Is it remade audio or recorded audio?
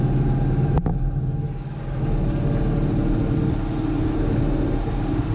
recorded